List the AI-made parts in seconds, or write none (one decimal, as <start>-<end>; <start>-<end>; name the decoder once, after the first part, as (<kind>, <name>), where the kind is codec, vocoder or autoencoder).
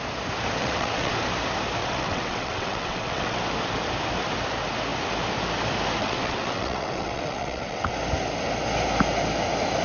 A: 0.6-1.1 (vocoder, WaveNeXt); 1.8-3.4; 6.0-7.9